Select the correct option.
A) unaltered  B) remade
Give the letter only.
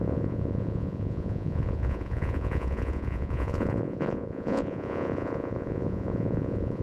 B